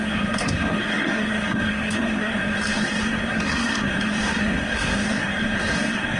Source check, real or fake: fake